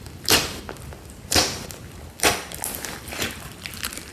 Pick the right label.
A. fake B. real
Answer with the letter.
B